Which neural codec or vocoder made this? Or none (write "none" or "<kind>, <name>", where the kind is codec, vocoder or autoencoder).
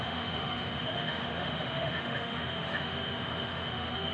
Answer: autoencoder, DAC-VAE